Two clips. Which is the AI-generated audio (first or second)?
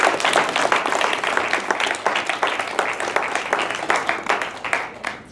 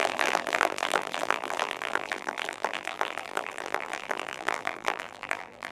second